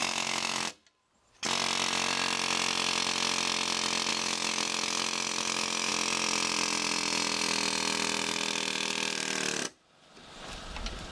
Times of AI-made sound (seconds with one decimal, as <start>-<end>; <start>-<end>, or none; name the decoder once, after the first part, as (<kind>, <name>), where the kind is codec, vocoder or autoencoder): 0.0-0.7 (autoencoder, DAC-VAE); 4.1-5.9